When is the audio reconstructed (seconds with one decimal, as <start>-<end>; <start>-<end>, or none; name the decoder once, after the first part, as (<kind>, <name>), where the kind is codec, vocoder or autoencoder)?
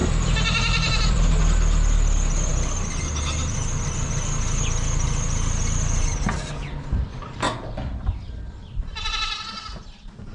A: 0.0-1.4 (vocoder, BigVGAN v2); 8.6-9.1